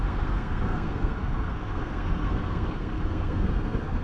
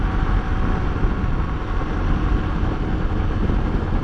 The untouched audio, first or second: second